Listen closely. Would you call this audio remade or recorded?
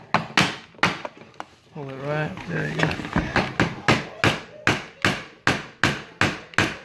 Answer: recorded